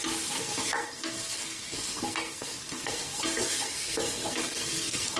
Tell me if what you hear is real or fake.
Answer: fake